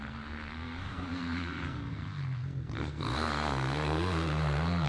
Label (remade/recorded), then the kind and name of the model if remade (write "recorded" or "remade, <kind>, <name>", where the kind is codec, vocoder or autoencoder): remade, codec, SNAC